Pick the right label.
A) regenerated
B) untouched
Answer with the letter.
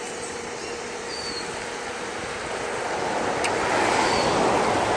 B